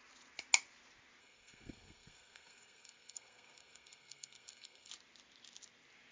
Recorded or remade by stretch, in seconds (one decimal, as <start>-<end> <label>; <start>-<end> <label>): 0.0-1.2 recorded; 1.2-4.9 remade; 4.9-6.1 recorded